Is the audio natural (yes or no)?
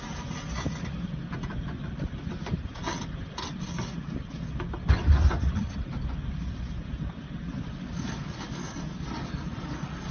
yes